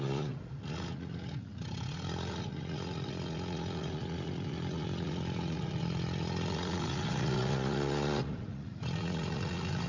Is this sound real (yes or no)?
no